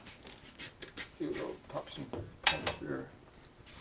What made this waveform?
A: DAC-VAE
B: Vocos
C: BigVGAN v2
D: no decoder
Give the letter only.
D